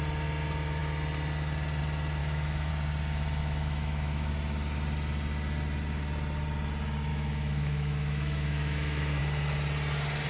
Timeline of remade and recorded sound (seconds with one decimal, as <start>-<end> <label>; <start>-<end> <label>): 0.0-2.2 recorded; 2.2-2.7 remade; 2.7-3.4 recorded; 3.4-4.3 remade; 4.3-7.1 recorded; 7.1-9.2 remade; 9.2-10.3 recorded